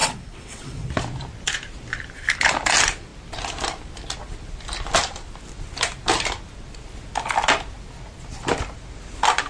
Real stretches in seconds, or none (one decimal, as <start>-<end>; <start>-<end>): 0.9-9.5